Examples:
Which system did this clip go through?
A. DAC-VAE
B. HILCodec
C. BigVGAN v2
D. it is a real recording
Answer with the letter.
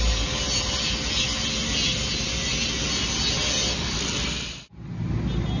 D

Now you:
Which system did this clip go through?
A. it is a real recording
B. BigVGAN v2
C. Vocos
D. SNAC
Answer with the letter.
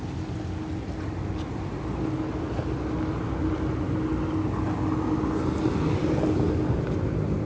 A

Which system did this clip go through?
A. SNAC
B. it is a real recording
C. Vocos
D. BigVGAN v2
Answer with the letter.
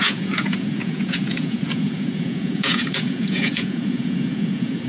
C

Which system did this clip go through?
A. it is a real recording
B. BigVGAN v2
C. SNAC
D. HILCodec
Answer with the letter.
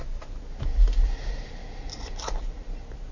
A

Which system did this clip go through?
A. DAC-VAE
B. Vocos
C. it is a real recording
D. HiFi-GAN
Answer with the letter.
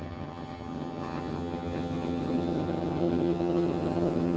D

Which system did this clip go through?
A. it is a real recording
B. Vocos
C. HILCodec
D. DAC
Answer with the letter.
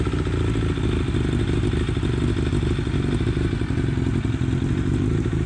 A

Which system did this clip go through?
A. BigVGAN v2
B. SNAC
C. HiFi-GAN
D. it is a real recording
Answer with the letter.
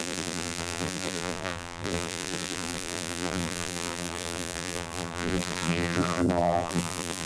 A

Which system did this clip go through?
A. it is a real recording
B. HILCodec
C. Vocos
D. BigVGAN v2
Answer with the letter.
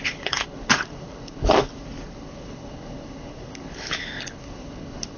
B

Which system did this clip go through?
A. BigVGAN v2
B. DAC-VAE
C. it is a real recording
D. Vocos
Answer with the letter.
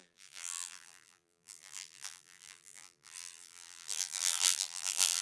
A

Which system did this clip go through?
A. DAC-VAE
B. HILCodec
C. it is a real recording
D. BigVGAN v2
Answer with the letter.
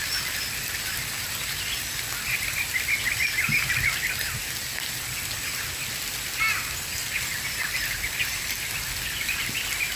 C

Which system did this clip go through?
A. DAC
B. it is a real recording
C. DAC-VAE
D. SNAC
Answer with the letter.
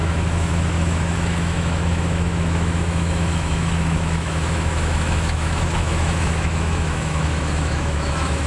C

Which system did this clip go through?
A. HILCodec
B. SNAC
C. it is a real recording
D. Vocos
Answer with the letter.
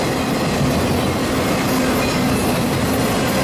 C